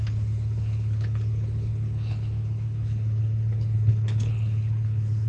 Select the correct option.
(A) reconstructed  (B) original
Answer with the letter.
A